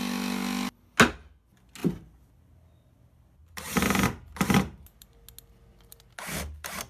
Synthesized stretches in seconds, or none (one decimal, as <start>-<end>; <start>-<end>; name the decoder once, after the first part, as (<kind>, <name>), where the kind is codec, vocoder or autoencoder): none